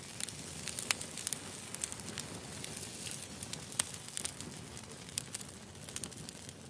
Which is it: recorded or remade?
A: recorded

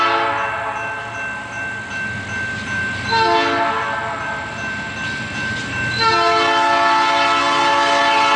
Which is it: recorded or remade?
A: recorded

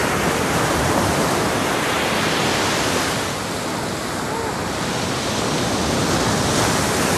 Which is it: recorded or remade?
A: recorded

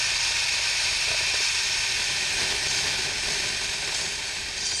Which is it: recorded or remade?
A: recorded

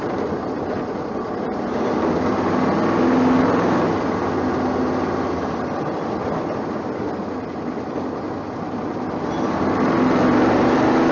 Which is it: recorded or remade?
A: recorded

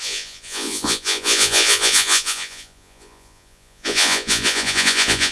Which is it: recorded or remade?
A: remade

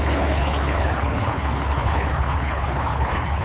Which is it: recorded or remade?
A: remade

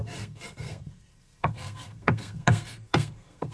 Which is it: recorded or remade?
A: remade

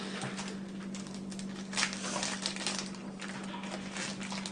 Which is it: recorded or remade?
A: recorded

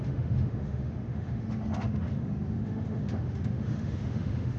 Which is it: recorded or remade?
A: remade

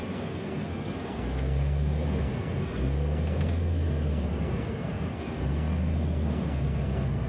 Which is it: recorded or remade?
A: remade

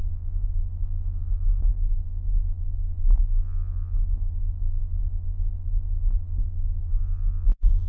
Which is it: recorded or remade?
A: remade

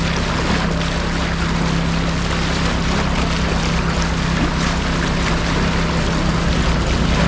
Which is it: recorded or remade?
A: recorded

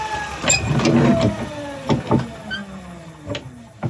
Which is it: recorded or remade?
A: recorded